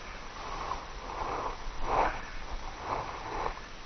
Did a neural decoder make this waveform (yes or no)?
no